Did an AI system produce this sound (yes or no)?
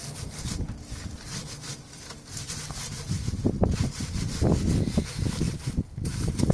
no